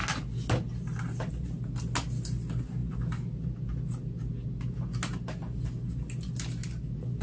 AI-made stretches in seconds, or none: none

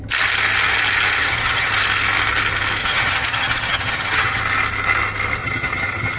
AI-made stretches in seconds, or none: 1.2-1.7; 2.8-4.4; 5.4-6.2

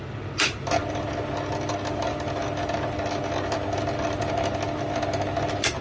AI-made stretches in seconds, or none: none

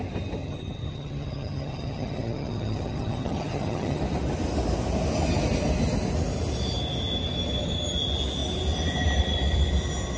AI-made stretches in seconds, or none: 0.4-4.0

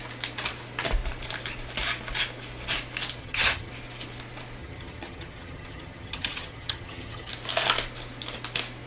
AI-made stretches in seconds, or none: 3.2-3.7; 4.6-7.3

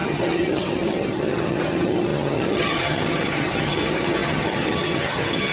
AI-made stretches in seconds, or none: 0.0-5.5

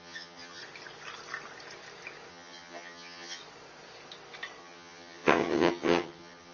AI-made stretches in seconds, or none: 0.0-0.6; 2.3-3.4; 4.6-6.5